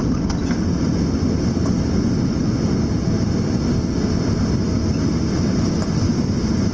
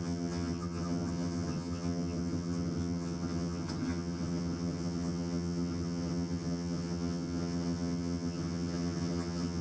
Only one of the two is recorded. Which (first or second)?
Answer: first